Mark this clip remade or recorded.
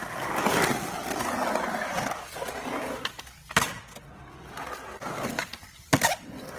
recorded